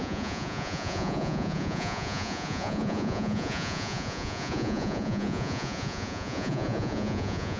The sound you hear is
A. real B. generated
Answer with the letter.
B